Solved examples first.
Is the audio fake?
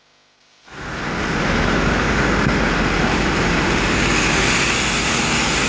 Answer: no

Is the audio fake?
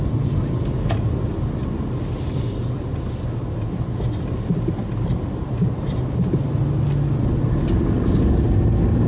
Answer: no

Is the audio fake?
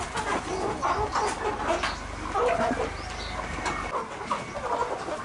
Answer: no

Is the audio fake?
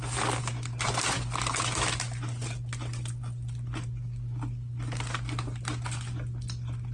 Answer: no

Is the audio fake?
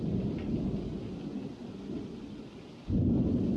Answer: no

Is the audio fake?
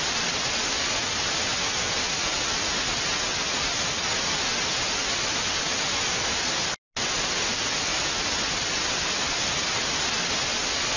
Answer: no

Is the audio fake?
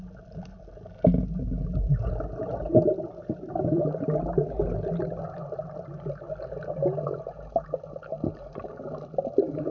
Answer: no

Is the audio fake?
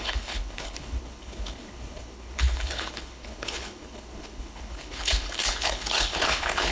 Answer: yes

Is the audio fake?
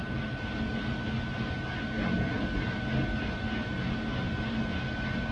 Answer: no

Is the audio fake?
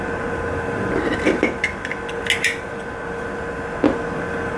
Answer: no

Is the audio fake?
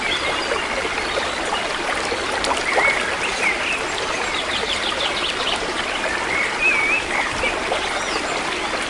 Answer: no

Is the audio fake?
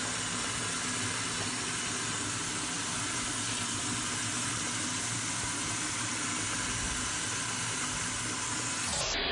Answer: no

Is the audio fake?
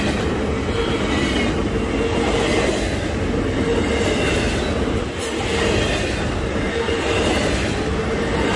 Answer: no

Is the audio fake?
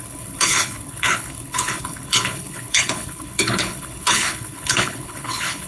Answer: yes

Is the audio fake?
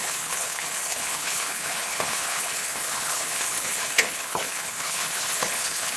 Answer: yes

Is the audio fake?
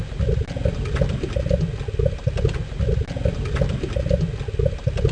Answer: no